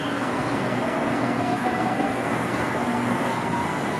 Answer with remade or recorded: remade